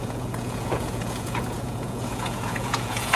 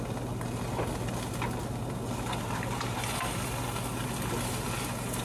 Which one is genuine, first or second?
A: second